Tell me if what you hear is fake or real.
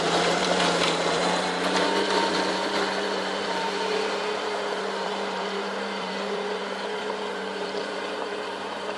fake